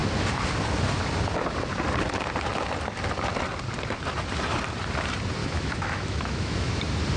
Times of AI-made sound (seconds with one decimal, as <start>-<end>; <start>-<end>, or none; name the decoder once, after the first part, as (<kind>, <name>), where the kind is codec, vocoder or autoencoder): 5.4-6.8 (autoencoder, DAC-VAE)